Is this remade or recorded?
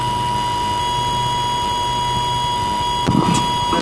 recorded